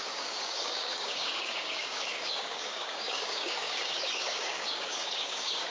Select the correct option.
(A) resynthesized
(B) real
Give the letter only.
A